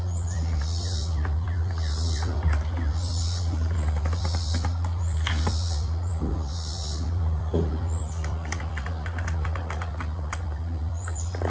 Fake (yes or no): yes